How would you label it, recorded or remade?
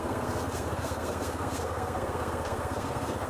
remade